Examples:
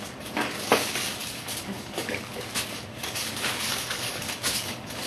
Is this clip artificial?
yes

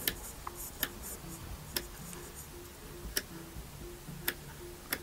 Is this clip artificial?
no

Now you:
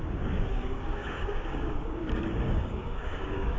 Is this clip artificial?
yes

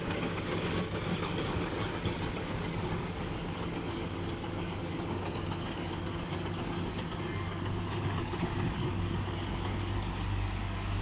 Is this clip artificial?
yes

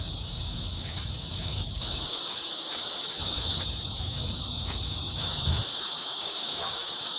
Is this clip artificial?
yes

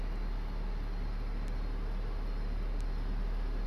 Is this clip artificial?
no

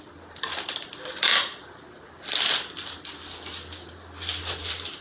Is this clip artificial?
no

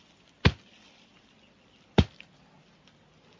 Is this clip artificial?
no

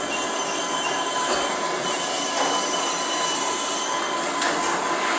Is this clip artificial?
no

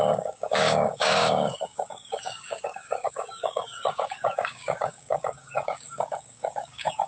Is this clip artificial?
yes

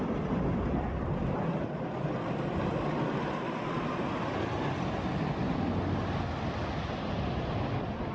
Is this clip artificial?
no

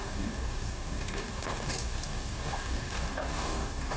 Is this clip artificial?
yes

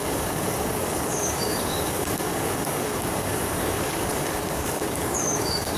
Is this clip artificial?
yes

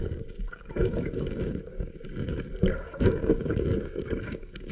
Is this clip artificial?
yes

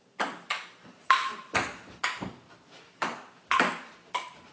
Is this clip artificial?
no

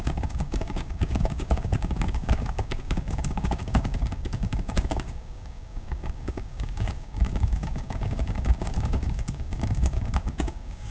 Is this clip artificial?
yes